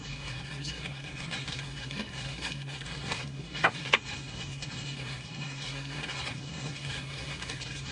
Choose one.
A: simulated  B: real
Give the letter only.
A